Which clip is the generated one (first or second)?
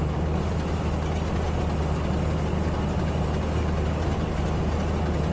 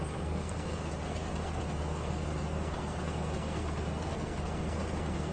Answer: second